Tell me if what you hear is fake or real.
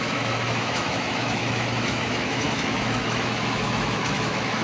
fake